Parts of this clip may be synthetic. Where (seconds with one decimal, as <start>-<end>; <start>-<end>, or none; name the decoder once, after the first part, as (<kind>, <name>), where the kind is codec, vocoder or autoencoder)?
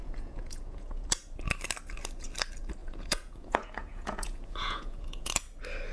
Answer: 0.0-1.1 (vocoder, Vocos); 2.8-5.3